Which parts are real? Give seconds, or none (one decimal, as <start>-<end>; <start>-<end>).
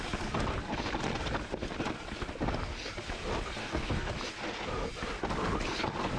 0.0-3.6; 4.1-6.2